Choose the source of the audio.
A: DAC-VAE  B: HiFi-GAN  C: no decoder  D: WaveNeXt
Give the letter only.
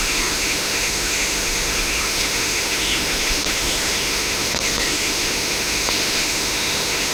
A